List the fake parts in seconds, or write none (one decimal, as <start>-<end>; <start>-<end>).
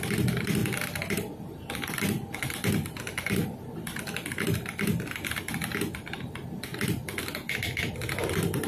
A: none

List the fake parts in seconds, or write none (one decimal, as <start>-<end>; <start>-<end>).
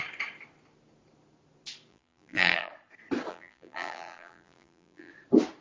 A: 1.9-2.7; 3.3-5.1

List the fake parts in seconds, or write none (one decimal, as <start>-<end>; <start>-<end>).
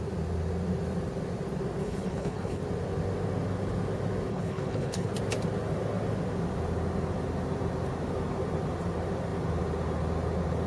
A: 1.8-2.6; 4.3-5.1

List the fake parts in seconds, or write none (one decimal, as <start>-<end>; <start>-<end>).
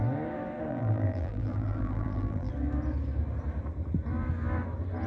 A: 0.7-2.5